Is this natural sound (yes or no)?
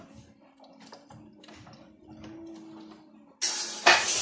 yes